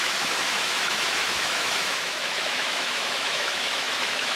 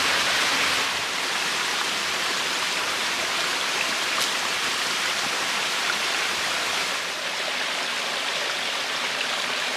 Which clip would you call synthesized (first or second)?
first